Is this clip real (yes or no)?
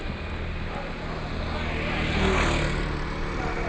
yes